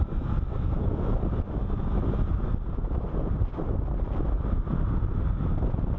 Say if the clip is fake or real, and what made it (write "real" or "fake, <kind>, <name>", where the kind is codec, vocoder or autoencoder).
real